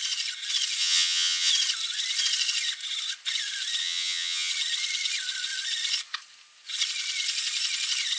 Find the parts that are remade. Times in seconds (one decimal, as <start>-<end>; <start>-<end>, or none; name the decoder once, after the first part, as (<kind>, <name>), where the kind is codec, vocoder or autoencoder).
0.8-1.5 (vocoder, HiFi-GAN); 3.8-4.5